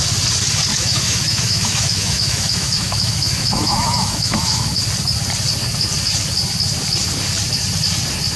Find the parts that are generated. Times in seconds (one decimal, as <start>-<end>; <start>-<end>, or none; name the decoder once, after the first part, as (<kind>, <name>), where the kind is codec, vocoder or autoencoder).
0.7-4.8 (autoencoder, DAC-VAE)